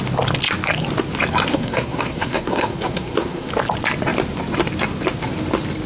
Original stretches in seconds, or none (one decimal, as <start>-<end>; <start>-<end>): 0.0-1.5; 3.5-5.9